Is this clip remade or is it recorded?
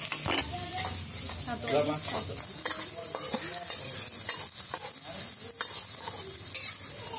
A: recorded